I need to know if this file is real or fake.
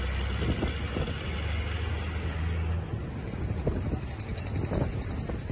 real